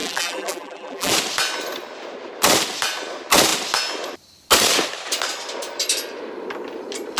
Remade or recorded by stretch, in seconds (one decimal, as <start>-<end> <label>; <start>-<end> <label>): 0.0-1.1 remade; 1.1-7.2 recorded